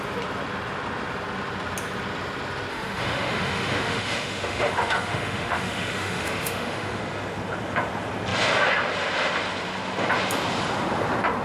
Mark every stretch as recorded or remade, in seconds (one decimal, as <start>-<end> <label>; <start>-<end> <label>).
0.0-2.7 recorded; 2.7-7.0 remade; 7.0-11.4 recorded

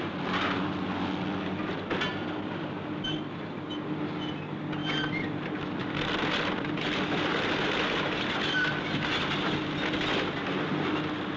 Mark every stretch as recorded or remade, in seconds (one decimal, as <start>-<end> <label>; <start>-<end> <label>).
0.0-4.8 recorded; 4.8-8.7 remade; 8.7-11.4 recorded

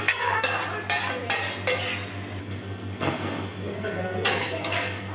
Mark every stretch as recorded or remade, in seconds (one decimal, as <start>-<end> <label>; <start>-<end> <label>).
0.0-0.6 remade; 0.6-2.4 recorded; 2.4-5.1 remade

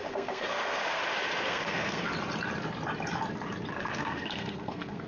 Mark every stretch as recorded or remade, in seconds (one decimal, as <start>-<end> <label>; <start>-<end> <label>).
0.0-1.0 remade; 1.0-1.5 recorded; 1.5-2.1 remade; 2.1-3.8 recorded; 3.8-5.1 remade